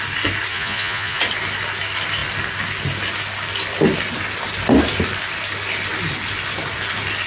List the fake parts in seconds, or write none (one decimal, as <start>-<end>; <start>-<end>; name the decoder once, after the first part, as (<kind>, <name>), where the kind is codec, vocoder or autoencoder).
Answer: 0.5-1.2 (vocoder, Vocos)